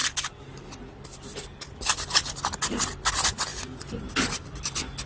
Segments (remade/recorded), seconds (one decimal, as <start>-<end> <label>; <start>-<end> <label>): 0.0-5.1 recorded